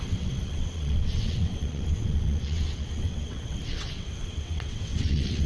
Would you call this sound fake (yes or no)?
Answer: yes